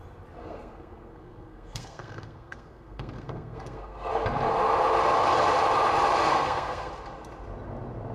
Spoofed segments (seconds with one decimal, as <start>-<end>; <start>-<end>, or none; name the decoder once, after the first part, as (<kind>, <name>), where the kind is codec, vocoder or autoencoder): 0.4-4.1 (codec, SNAC); 6.3-6.9